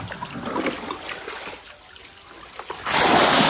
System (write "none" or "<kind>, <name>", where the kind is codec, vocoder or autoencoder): none